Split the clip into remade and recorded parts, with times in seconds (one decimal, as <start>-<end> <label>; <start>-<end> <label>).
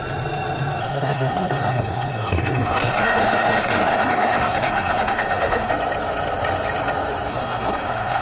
0.0-0.8 recorded; 0.8-5.7 remade; 5.7-7.3 recorded; 7.3-8.2 remade